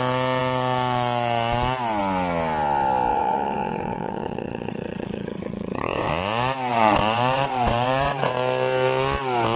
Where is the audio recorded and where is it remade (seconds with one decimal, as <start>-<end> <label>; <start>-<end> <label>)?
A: 0.0-3.1 recorded; 3.1-6.1 remade; 6.1-6.7 recorded; 6.7-8.3 remade; 8.3-9.6 recorded